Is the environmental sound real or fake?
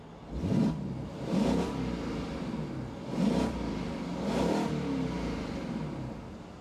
real